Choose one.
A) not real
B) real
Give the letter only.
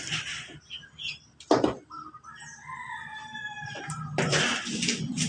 B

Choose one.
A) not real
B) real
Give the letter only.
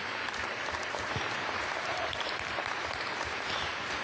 A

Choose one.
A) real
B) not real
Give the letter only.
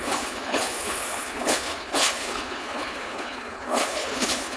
B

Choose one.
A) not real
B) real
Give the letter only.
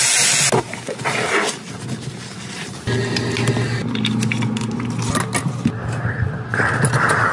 B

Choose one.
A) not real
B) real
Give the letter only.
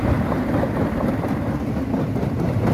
B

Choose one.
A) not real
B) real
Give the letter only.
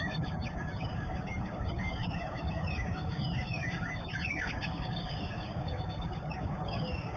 A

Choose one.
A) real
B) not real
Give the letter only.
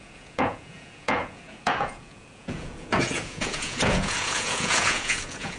B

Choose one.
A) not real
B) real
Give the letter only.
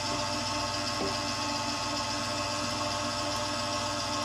B